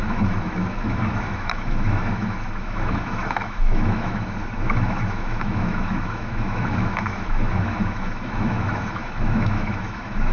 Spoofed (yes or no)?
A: yes